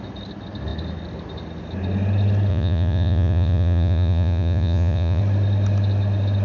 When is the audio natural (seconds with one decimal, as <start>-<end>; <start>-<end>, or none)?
0.0-2.5; 5.2-6.4